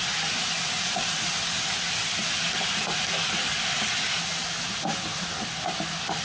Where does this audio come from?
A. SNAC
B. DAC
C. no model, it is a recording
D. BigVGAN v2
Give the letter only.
C